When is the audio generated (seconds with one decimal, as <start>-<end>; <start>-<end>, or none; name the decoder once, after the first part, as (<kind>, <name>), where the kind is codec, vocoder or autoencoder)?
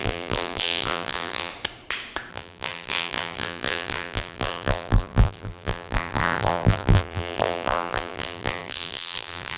0.0-1.5 (vocoder, BigVGAN v2); 2.3-9.6